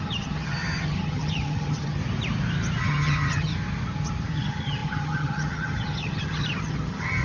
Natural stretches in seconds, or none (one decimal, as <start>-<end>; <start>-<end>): 2.0-2.8; 3.5-4.3